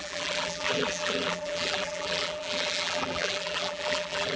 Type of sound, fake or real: fake